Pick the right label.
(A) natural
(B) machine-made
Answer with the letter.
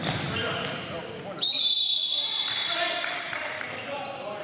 B